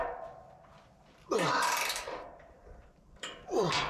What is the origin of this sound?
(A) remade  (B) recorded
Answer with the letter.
A